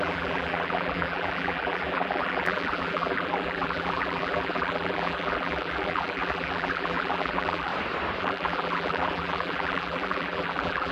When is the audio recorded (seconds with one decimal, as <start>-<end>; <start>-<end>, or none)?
7.7-8.2